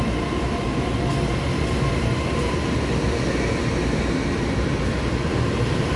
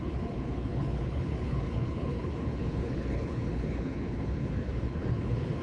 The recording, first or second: first